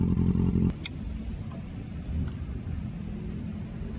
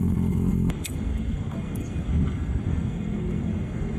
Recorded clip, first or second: first